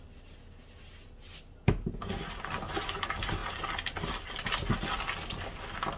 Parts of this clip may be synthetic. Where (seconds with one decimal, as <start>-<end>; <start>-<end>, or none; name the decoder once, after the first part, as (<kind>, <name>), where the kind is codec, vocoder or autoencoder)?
none